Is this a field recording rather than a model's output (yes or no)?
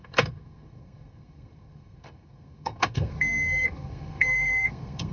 no